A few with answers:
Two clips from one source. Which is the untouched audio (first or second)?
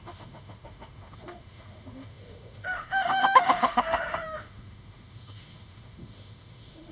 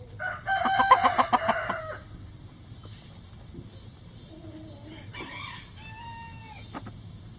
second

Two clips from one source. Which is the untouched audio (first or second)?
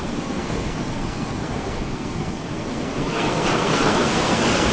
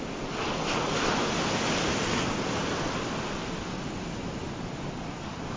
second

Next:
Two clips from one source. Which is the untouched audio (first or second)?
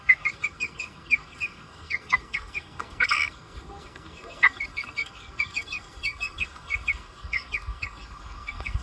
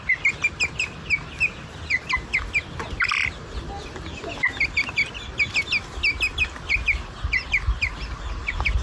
second